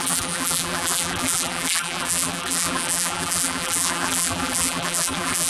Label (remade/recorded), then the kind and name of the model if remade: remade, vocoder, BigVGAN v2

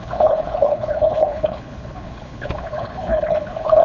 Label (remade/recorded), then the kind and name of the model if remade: remade, codec, HILCodec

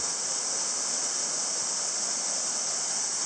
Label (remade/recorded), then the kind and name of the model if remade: recorded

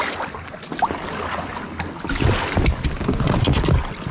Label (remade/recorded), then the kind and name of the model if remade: recorded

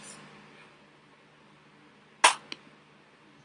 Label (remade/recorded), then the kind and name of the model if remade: recorded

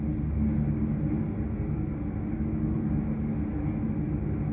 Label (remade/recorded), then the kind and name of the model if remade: recorded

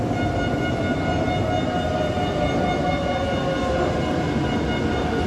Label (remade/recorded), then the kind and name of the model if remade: recorded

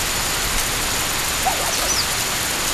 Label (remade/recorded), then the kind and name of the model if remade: recorded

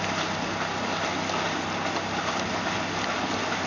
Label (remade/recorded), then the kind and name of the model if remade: recorded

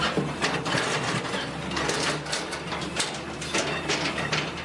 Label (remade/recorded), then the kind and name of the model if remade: remade, vocoder, BigVGAN v2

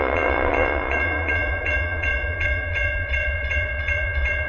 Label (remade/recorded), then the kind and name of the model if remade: remade, vocoder, Vocos